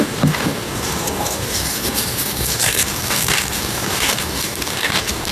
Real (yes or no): no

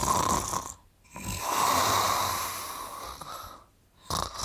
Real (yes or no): yes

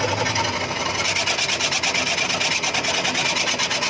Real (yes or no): yes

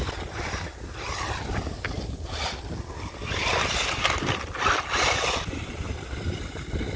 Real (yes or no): yes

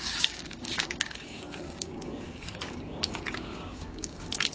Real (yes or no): no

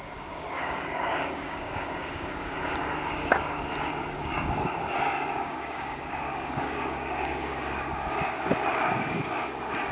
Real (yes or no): no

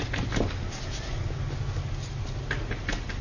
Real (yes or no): yes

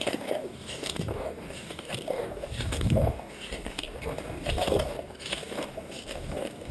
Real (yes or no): no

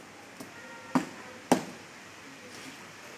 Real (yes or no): yes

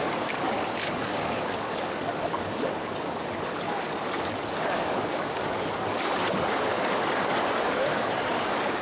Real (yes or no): no